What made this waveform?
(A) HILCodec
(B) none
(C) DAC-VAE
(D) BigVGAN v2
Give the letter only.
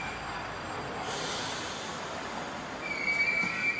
B